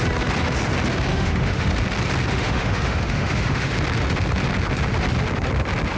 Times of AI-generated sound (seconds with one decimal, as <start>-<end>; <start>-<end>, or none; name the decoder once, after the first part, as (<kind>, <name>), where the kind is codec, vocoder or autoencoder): 1.1-1.7 (autoencoder, DAC-VAE); 2.3-3.7